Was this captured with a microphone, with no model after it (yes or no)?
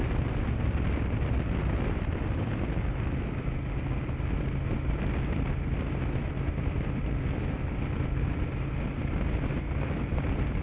yes